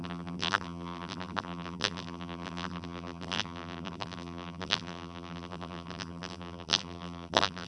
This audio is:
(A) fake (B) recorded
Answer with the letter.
A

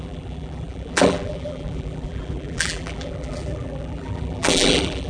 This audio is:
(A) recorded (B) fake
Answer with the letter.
B